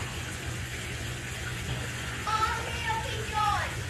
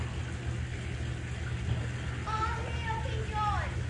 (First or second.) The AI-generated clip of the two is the first